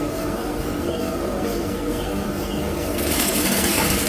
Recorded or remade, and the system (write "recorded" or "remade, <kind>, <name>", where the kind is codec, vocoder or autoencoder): remade, codec, SNAC